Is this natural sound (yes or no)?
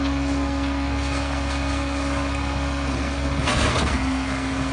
no